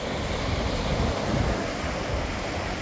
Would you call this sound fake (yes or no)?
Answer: no